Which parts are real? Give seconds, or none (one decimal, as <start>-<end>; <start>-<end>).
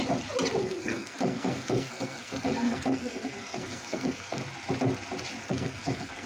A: 0.0-0.6; 4.4-5.4